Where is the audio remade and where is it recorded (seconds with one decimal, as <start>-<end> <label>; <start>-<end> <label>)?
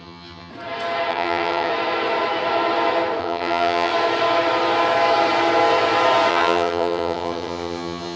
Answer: 0.0-0.5 remade; 0.5-1.1 recorded; 1.1-1.7 remade; 1.7-3.2 recorded; 3.2-3.9 remade; 3.9-6.3 recorded; 6.3-8.2 remade